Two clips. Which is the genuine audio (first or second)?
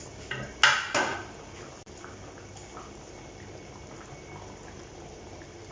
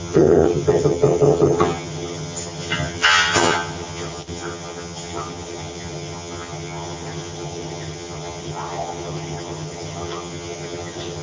first